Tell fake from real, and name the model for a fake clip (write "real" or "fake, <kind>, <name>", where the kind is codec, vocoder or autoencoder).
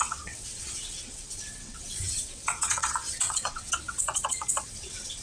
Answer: fake, vocoder, WaveNeXt